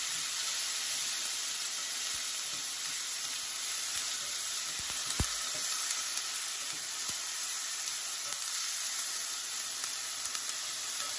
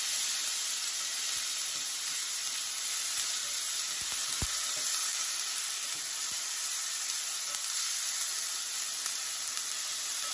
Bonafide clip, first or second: second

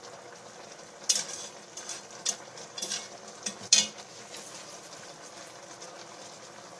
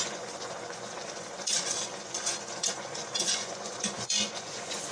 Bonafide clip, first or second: first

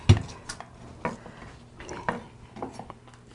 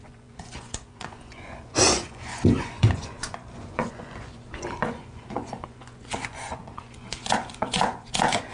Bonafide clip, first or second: first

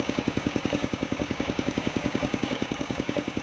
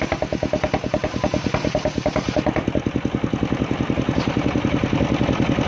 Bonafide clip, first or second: second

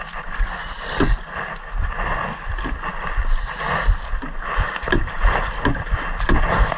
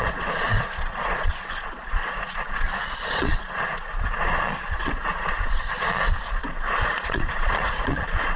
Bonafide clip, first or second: first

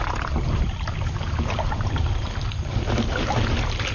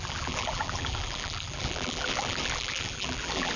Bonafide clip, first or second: first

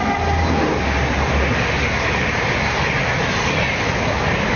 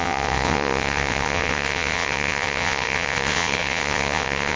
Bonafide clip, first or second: first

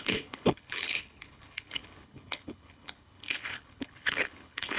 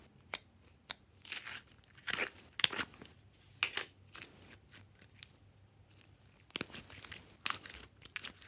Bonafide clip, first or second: second